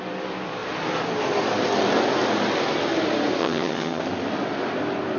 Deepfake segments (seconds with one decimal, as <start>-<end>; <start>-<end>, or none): 3.4-4.0